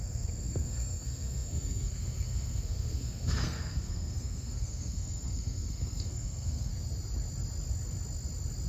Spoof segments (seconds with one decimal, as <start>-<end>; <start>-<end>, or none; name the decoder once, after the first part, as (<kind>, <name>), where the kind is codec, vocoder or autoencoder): 0.0-6.7 (codec, SNAC)